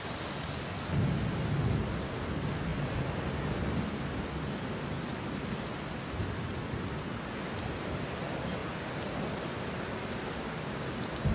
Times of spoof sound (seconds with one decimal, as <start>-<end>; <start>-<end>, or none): none